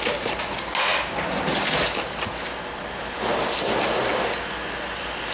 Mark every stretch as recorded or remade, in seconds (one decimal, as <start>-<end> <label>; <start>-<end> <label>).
0.0-5.3 recorded